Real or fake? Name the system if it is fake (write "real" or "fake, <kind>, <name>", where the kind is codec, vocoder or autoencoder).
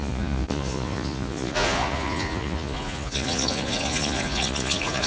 fake, vocoder, Vocos